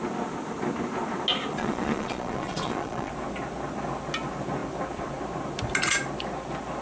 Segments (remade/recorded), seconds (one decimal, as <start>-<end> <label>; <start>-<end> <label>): 0.0-1.5 recorded; 1.5-3.1 remade; 3.1-6.8 recorded